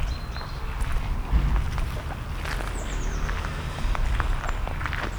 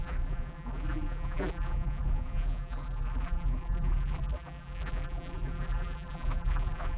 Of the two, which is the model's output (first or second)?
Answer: second